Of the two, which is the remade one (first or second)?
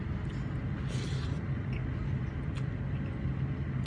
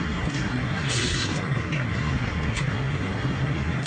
second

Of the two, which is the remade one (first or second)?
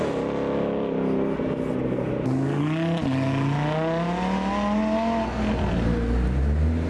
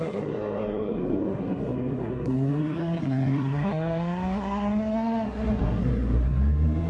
second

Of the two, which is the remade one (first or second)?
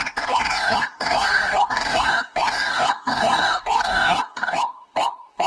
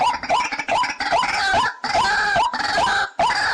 first